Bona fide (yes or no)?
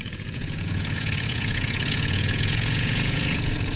no